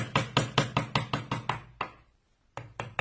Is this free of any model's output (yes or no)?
yes